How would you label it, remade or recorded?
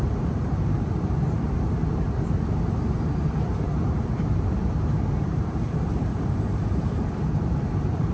remade